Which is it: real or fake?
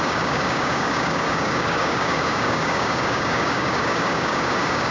fake